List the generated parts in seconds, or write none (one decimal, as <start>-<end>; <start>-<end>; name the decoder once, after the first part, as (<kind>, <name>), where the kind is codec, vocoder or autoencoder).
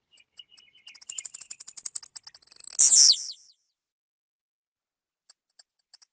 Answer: none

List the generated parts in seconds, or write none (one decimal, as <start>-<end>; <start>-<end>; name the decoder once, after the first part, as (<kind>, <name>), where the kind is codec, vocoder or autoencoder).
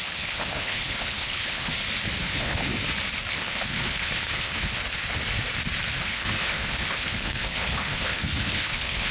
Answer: 0.0-1.7 (codec, HILCodec); 2.2-2.7; 3.3-4.8; 6.0-9.1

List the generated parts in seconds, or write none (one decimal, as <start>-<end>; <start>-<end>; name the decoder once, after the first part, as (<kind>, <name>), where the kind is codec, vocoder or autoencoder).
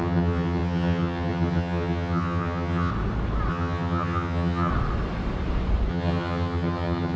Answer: 0.0-2.9 (vocoder, HiFi-GAN); 3.5-4.7; 5.9-7.2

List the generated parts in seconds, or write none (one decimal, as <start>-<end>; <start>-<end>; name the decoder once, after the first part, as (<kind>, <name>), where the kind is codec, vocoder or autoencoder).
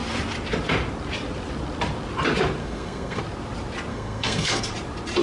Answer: 2.6-3.2 (codec, SNAC); 3.9-4.6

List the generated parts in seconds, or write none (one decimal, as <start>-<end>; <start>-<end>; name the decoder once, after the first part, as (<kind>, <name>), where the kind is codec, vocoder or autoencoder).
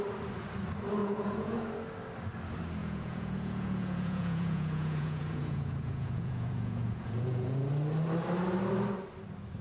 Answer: 1.0-1.6 (vocoder, Vocos); 2.8-7.7